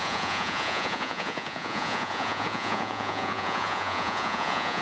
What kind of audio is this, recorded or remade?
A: remade